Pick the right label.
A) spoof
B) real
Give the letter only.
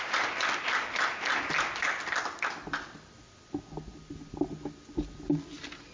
B